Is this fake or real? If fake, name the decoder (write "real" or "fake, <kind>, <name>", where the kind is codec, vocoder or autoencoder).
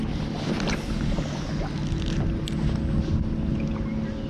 real